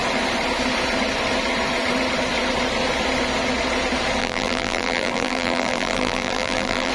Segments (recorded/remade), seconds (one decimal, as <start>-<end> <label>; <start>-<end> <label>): 0.0-4.2 recorded; 4.2-6.9 remade